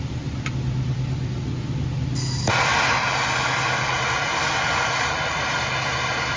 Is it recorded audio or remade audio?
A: recorded